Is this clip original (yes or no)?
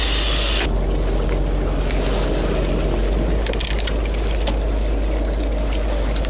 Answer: yes